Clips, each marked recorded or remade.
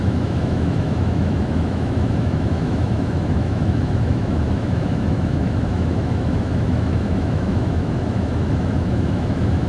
remade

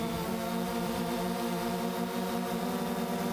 remade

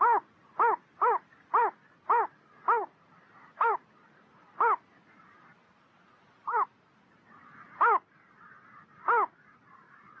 recorded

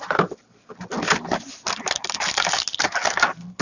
recorded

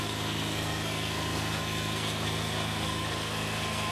remade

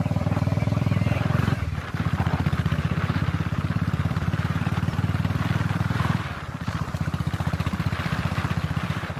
remade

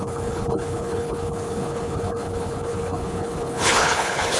remade